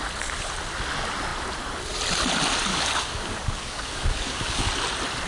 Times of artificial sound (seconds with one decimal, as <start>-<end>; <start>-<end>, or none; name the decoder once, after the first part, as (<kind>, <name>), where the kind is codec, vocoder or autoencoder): 2.7-4.7 (codec, DAC)